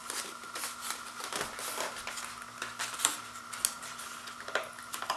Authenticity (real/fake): real